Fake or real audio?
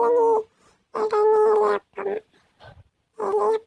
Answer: real